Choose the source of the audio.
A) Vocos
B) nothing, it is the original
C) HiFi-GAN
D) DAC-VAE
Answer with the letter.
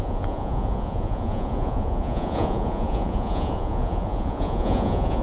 A